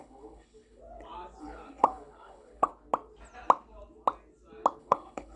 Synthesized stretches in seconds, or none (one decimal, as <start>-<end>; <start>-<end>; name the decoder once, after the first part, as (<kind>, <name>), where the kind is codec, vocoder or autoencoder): 0.0-0.8 (codec, HILCodec); 1.4-2.7; 4.8-5.4